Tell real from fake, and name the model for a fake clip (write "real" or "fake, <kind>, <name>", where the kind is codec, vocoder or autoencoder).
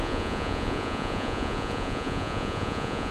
fake, vocoder, Vocos